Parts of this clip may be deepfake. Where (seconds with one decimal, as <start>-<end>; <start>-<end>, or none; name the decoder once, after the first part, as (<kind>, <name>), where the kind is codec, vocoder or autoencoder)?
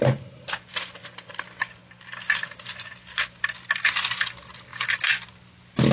none